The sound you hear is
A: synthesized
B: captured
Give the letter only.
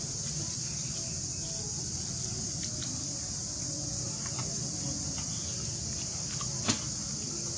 B